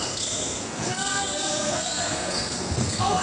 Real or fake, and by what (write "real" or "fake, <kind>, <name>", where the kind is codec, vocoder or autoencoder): fake, codec, SNAC